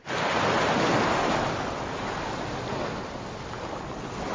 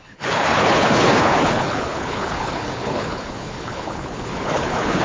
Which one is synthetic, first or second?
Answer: second